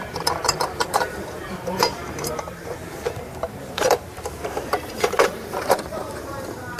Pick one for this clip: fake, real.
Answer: fake